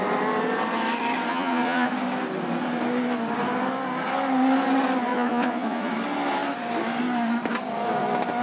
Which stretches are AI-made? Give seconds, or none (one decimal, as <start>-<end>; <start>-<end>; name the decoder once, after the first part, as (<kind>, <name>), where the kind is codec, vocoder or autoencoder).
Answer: 1.3-1.9 (vocoder, Vocos); 5.1-5.9